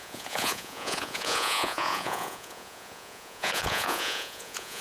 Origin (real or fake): fake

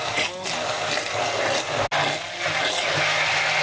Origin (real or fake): real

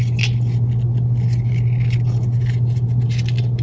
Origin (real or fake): real